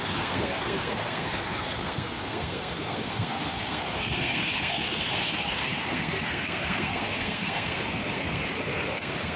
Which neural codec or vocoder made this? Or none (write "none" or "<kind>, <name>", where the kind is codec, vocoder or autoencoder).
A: codec, SNAC